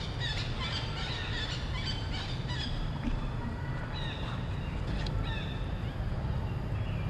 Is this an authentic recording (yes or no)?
yes